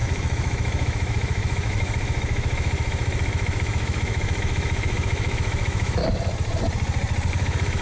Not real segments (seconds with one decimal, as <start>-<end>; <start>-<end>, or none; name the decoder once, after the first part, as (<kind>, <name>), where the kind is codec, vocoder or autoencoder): 0.0-6.0 (autoencoder, DAC-VAE); 7.3-7.8